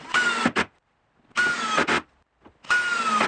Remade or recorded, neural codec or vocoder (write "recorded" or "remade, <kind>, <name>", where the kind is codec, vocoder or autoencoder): recorded